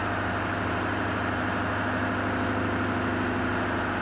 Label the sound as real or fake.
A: real